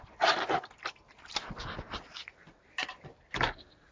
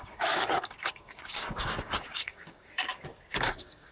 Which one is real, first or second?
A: first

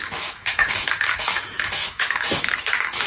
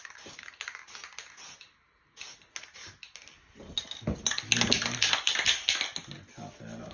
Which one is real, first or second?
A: second